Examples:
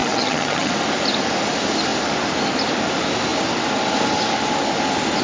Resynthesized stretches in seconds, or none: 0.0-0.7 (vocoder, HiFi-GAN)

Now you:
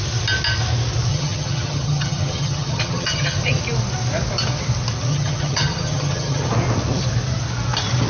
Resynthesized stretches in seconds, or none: 1.1-3.6 (vocoder, HiFi-GAN); 5.1-6.5

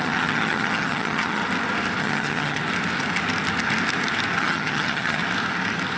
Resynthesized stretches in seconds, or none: 0.0-1.4 (vocoder, HiFi-GAN); 2.0-2.6; 4.4-5.2